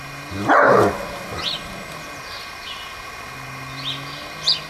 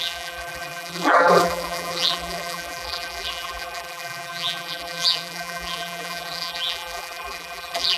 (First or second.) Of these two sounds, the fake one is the second